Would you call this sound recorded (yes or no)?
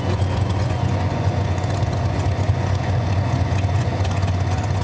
no